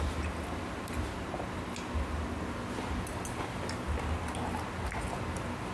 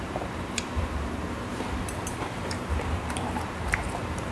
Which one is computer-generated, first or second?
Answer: second